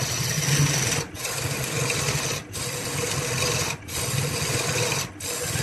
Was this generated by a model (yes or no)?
no